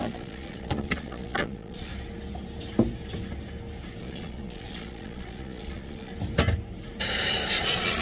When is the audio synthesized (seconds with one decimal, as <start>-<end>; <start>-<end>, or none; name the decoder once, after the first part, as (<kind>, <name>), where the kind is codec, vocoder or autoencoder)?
0.0-1.9 (vocoder, Vocos); 4.0-6.1; 7.6-8.0